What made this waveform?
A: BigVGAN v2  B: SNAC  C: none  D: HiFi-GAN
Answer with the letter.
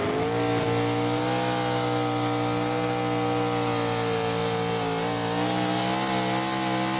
C